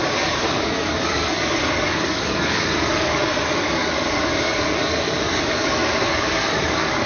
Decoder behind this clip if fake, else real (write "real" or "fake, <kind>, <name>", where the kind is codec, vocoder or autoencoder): fake, codec, DAC